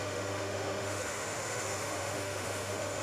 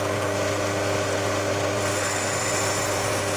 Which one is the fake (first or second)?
first